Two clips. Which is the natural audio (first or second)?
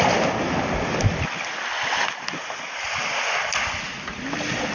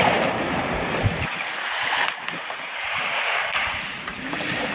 first